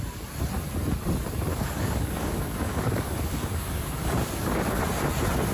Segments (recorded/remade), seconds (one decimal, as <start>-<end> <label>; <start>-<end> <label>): 0.0-1.5 recorded; 1.5-4.8 remade; 4.8-5.5 recorded